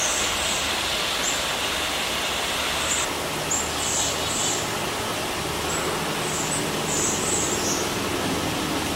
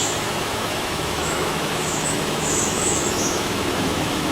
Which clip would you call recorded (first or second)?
first